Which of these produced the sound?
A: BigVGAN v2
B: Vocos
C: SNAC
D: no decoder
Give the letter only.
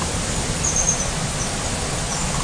D